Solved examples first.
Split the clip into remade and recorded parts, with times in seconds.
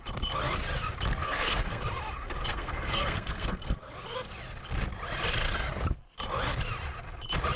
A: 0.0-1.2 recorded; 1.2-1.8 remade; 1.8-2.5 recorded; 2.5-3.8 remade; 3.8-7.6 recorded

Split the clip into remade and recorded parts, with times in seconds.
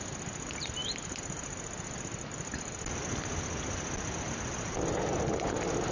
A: 0.0-5.9 recorded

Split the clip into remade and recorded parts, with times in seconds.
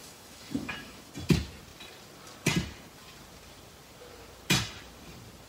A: 0.0-1.1 remade; 1.1-5.5 recorded